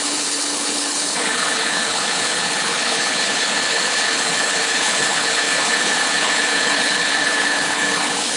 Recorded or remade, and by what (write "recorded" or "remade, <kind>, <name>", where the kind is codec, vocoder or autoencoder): remade, codec, HILCodec